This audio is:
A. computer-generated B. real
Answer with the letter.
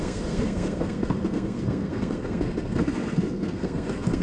A